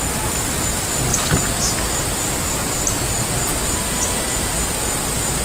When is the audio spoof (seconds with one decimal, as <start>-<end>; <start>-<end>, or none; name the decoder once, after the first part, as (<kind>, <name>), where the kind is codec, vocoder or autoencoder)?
none